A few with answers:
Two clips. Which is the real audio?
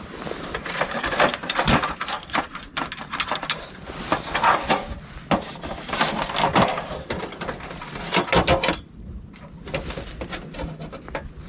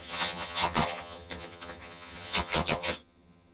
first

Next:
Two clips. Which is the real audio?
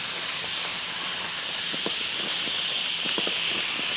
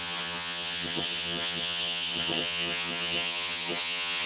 first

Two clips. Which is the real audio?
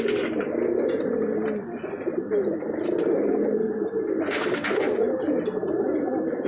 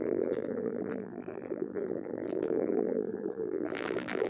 first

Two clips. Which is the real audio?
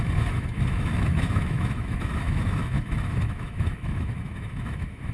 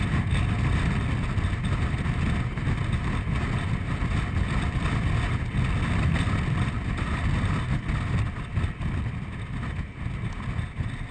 second